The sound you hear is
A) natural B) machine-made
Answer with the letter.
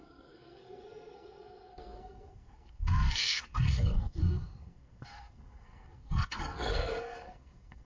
B